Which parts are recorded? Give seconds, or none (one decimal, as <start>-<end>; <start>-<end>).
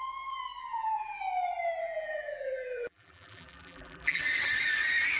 0.0-0.6; 1.2-1.8; 4.2-5.2